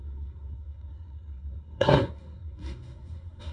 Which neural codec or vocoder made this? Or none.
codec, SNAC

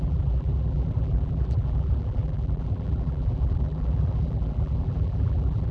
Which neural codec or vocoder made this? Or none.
vocoder, BigVGAN v2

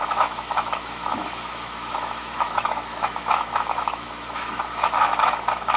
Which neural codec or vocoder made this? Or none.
autoencoder, DAC-VAE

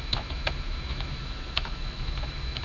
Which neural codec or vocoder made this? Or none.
autoencoder, DAC-VAE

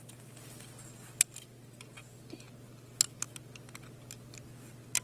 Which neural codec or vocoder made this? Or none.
none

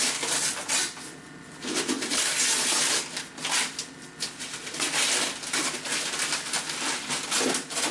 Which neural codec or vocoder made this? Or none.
none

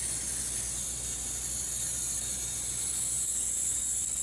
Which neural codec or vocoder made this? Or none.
none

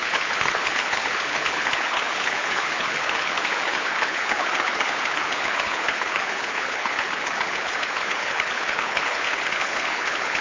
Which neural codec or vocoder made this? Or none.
codec, HILCodec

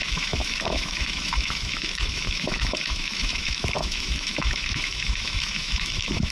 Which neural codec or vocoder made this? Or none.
autoencoder, DAC-VAE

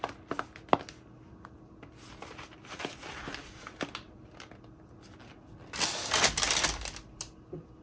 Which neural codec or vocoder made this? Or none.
none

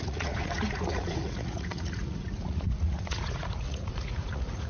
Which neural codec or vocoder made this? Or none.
vocoder, Vocos